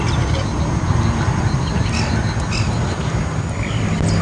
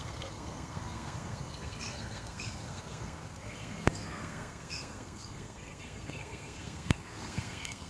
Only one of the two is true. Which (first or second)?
first